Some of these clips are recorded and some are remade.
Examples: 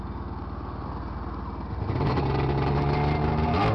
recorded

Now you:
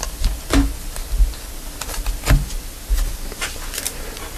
recorded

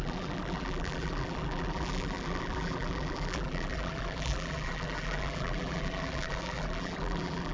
remade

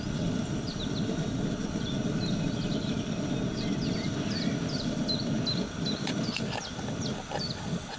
recorded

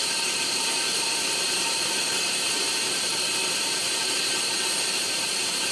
remade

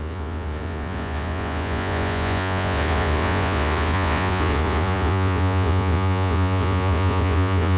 remade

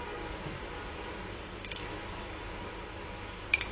recorded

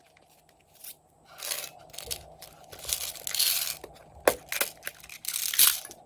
recorded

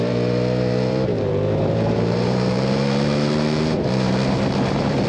remade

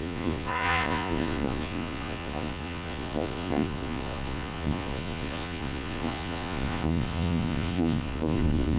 remade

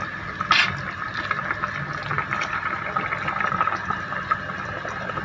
recorded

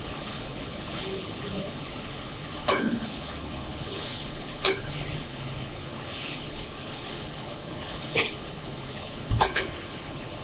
remade